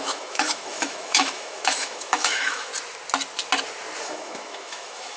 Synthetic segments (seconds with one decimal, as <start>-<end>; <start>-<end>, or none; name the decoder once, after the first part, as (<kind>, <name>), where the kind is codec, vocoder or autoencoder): 0.0-2.7 (autoencoder, DAC-VAE); 4.0-5.2